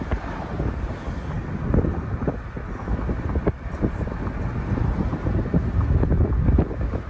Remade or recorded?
recorded